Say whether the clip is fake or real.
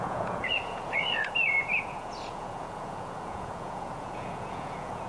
fake